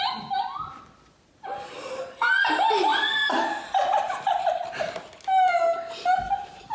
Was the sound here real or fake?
real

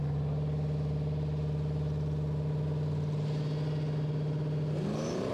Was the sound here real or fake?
real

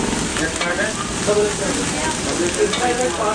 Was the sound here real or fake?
real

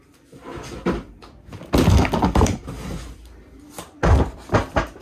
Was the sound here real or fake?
real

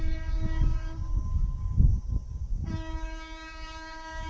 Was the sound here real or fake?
fake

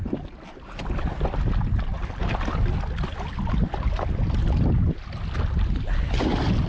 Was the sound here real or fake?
real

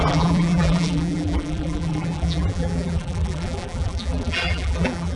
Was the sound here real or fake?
fake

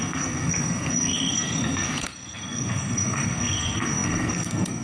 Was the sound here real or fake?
fake